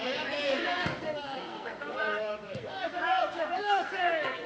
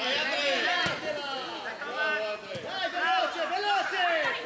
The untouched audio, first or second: second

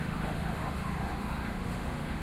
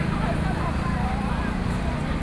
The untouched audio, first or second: second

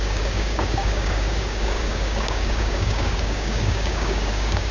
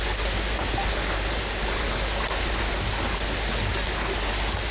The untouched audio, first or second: second